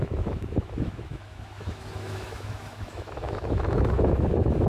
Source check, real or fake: fake